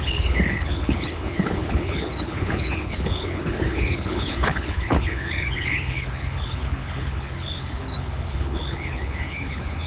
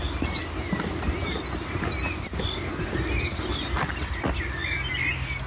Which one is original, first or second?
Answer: second